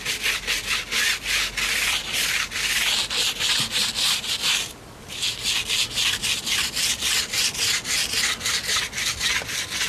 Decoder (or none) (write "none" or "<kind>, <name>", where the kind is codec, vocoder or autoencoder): none